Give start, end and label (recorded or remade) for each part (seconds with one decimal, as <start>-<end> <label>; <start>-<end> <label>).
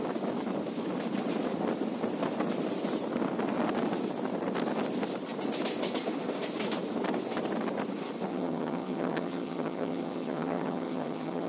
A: 0.0-8.3 recorded; 8.3-11.5 remade